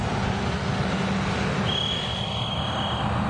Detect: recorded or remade recorded